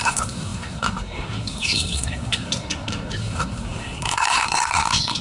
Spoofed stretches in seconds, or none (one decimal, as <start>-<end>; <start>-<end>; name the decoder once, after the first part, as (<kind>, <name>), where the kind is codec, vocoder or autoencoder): 0.0-5.2 (codec, SNAC)